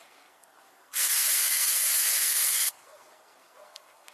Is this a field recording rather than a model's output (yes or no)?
no